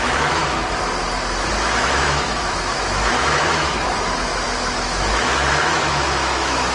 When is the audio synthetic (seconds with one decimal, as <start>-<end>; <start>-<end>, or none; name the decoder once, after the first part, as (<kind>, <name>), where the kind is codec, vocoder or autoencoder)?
0.0-0.4 (autoencoder, DAC-VAE); 1.5-6.7